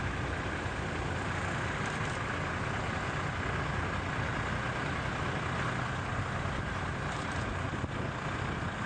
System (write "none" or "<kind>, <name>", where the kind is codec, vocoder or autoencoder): none